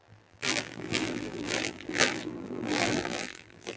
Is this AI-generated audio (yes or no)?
yes